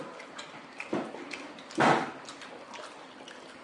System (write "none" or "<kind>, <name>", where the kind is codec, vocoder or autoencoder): none